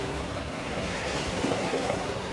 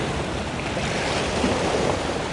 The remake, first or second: first